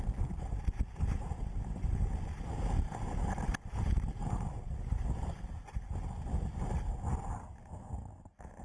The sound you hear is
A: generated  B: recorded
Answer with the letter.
B